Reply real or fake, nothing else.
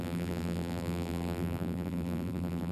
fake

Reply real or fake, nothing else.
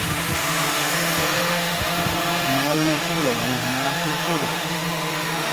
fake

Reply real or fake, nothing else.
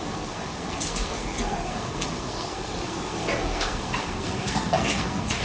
fake